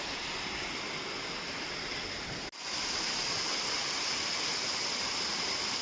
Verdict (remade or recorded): recorded